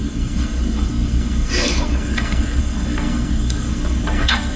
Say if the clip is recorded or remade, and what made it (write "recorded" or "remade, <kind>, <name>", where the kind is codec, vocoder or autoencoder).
remade, codec, SNAC